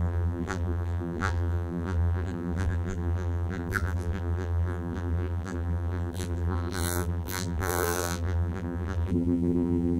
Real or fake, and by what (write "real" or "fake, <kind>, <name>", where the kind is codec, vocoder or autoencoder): fake, vocoder, BigVGAN v2